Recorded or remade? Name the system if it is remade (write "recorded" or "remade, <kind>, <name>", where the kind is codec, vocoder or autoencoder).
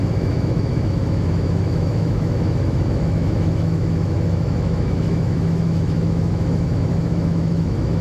remade, autoencoder, DAC-VAE